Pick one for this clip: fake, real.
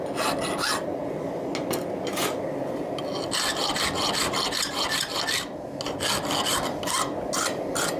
real